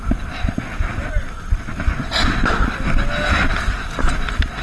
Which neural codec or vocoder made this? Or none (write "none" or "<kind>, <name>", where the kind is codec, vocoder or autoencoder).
none